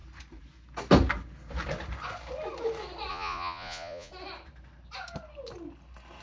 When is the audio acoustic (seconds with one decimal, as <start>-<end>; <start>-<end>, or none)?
0.0-3.1; 4.1-6.2